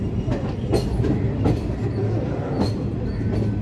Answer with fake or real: real